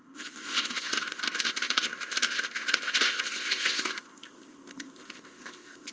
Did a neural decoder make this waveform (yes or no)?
yes